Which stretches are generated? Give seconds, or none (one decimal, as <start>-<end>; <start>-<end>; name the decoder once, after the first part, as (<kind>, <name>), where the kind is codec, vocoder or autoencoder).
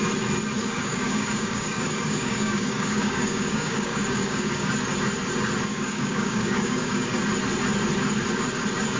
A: 0.6-4.7 (codec, DAC); 5.7-7.2